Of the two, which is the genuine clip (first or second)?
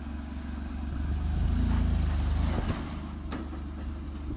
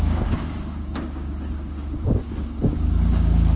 first